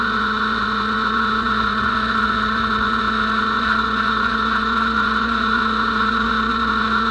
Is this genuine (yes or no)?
no